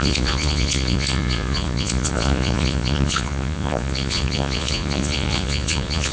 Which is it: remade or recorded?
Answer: remade